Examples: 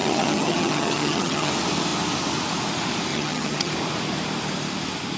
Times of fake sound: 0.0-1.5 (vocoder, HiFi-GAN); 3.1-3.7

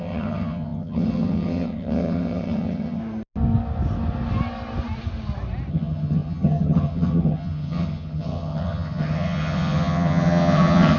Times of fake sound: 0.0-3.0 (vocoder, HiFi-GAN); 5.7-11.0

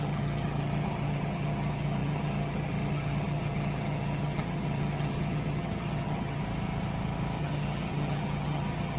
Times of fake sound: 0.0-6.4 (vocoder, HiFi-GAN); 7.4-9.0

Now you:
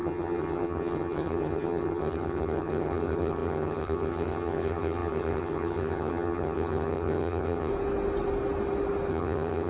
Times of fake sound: 0.0-7.7 (vocoder, HiFi-GAN); 9.1-9.7